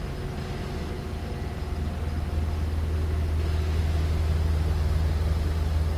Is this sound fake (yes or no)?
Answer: no